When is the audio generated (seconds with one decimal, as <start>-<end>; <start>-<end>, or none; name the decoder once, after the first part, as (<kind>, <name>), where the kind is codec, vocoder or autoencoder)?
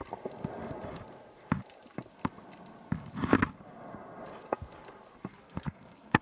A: 5.3-6.2 (codec, SNAC)